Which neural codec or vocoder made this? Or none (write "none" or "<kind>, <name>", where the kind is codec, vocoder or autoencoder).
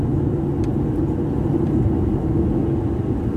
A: none